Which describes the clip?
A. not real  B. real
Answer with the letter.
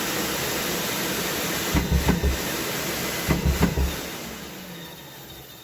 B